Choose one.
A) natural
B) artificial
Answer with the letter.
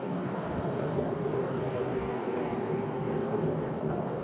B